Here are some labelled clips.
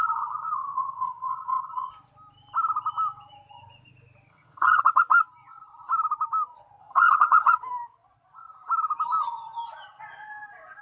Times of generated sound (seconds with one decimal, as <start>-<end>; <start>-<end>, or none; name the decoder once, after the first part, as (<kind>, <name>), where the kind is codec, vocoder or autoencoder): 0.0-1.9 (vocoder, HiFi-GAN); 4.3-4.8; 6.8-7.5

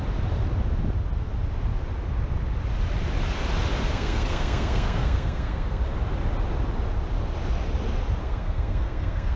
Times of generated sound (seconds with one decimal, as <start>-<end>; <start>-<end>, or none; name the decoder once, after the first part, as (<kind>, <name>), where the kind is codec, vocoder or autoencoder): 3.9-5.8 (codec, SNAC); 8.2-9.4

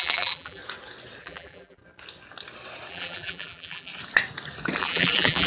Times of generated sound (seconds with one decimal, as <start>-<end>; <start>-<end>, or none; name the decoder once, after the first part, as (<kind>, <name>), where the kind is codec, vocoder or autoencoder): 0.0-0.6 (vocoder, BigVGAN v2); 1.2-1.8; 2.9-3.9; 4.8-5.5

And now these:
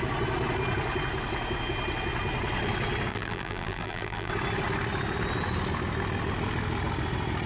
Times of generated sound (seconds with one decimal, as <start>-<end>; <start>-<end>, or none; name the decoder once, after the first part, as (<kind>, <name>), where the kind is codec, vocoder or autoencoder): 3.1-4.3 (vocoder, BigVGAN v2)

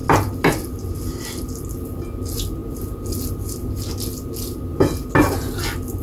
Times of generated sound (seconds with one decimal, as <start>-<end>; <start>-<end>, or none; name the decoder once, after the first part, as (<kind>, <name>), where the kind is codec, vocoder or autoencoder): none

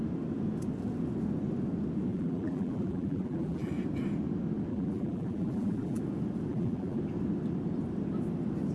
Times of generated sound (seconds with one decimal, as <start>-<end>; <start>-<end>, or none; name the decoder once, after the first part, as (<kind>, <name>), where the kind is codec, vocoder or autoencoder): 2.1-3.7 (vocoder, BigVGAN v2); 4.7-6.0; 6.5-7.0

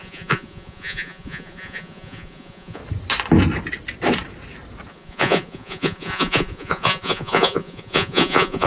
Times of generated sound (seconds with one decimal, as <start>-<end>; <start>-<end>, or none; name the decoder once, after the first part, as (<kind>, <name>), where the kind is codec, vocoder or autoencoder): 0.0-2.8 (vocoder, Vocos); 4.9-8.7